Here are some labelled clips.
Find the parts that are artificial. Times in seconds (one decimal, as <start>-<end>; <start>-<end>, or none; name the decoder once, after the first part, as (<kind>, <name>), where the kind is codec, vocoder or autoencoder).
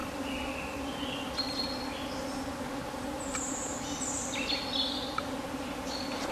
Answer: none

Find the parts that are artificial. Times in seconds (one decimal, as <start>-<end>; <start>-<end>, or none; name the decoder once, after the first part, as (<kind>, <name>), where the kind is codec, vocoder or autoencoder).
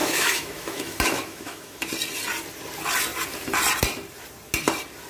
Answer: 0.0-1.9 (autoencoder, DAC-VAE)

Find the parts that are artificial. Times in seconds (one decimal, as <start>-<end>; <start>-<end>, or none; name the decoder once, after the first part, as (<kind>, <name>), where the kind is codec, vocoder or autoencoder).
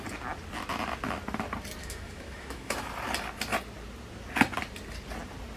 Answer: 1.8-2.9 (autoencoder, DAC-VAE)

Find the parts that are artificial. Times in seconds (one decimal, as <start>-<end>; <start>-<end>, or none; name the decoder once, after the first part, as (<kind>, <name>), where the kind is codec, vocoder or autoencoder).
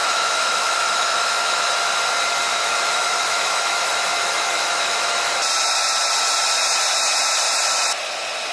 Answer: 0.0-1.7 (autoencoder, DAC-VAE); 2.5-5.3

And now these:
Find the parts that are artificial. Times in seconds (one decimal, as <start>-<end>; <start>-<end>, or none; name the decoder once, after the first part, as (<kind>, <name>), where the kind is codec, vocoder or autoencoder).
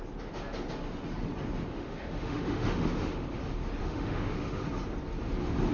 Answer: 1.7-3.4 (autoencoder, DAC-VAE); 3.8-4.6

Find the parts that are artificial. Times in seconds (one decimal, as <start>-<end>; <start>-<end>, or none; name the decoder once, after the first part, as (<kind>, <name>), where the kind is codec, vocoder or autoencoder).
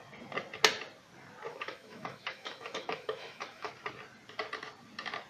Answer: 1.5-3.7 (autoencoder, DAC-VAE)